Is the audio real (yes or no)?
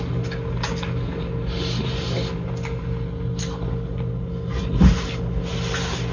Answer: yes